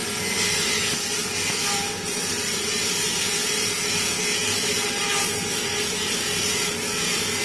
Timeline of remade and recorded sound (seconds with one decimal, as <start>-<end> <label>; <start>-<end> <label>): 0.0-3.9 remade; 3.9-4.4 recorded; 4.4-5.8 remade; 5.8-7.4 recorded